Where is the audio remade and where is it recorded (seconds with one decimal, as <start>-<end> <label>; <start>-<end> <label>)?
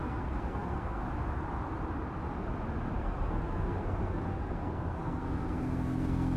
0.0-1.0 remade; 1.0-3.0 recorded; 3.0-6.4 remade